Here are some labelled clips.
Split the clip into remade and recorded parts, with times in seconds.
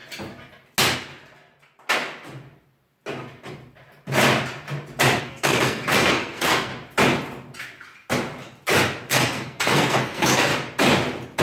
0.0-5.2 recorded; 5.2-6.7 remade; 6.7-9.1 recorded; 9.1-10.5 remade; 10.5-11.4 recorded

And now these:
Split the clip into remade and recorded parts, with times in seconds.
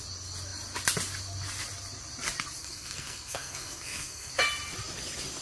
0.0-2.6 recorded; 2.6-4.3 remade; 4.3-5.4 recorded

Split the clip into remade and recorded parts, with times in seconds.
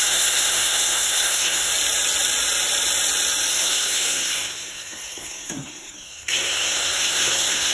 0.0-1.7 remade; 1.7-3.5 recorded; 3.5-7.7 remade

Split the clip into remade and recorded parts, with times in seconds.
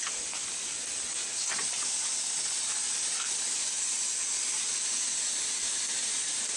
0.0-6.6 recorded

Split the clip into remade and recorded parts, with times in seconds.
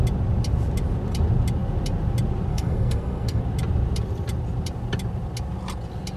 0.0-2.5 recorded; 2.5-3.4 remade; 3.4-6.2 recorded